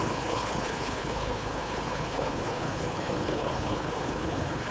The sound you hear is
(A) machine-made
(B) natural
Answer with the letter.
A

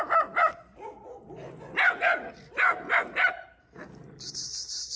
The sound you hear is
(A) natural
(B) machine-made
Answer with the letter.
A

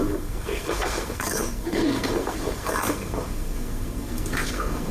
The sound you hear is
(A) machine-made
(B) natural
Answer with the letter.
A